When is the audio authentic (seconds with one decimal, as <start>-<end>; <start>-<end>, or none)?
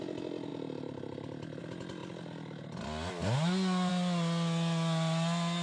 0.0-5.6